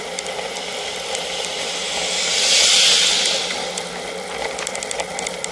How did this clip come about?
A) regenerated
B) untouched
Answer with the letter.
B